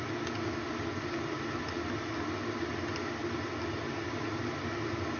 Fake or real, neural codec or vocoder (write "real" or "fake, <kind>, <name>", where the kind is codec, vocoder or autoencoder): real